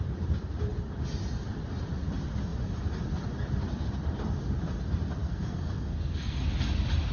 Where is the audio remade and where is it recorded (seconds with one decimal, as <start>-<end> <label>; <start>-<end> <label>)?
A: 0.0-5.2 recorded; 5.2-6.4 remade; 6.4-7.1 recorded